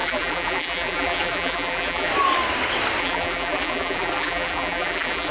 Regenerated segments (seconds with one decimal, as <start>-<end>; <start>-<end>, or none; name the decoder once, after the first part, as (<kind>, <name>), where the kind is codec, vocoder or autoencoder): 0.0-2.1 (vocoder, BigVGAN v2); 3.0-5.3